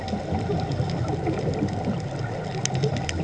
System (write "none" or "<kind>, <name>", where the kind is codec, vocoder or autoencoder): none